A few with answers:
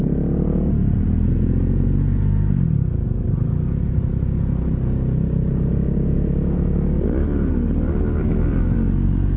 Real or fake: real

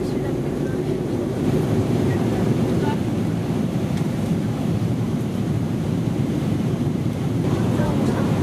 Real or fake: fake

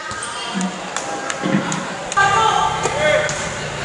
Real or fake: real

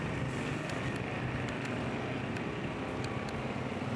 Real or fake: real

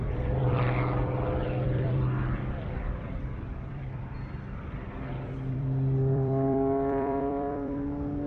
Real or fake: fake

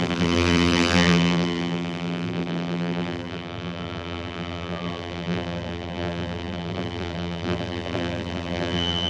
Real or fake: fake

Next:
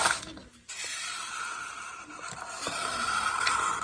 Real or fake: real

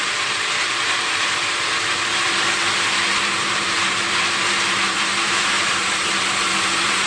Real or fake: fake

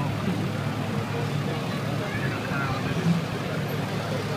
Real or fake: real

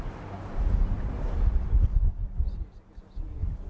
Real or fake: real